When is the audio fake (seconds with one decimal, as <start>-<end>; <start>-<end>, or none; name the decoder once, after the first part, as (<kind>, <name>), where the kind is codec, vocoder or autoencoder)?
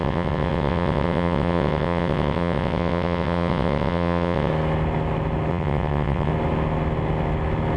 0.0-4.5 (vocoder, WaveNeXt); 5.5-6.3